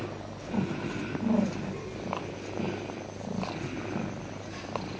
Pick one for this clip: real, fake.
real